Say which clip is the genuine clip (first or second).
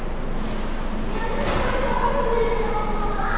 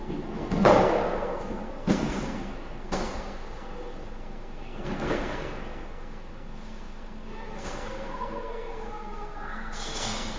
first